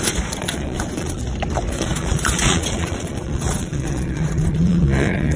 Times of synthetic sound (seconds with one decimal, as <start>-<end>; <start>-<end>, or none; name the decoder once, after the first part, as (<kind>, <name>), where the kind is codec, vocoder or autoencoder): 0.0-1.2 (vocoder, Vocos); 1.7-5.4